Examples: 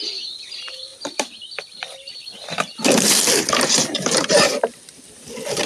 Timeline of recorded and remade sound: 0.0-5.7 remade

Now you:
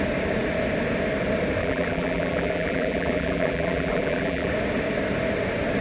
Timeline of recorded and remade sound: 0.0-1.6 recorded; 1.6-4.5 remade; 4.5-5.8 recorded

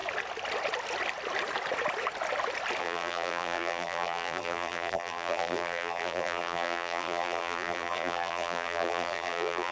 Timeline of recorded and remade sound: 0.0-2.8 recorded; 2.8-9.7 remade